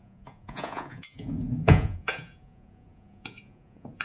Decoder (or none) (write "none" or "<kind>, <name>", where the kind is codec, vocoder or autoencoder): vocoder, Vocos